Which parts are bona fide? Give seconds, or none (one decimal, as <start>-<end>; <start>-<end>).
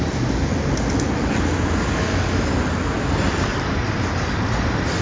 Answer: 0.0-3.5; 4.1-5.0